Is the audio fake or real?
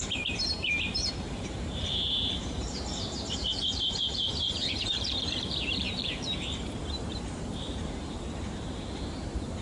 fake